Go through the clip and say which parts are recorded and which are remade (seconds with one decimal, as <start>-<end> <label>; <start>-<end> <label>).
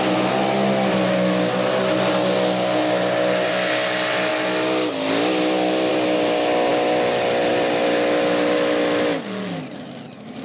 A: 0.0-10.4 recorded